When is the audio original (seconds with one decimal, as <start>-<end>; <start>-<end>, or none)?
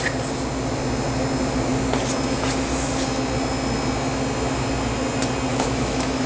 0.0-5.5